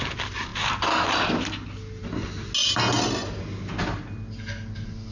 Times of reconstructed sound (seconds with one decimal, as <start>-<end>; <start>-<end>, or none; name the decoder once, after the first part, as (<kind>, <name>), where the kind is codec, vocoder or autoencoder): none